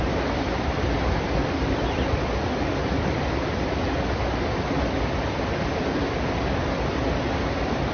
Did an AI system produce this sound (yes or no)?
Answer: no